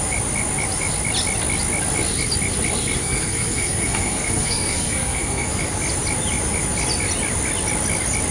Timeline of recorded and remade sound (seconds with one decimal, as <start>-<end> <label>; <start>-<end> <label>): 0.0-3.0 recorded; 3.0-5.5 remade; 5.5-8.3 recorded